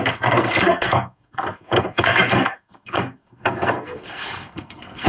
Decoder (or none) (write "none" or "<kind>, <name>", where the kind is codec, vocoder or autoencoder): codec, SNAC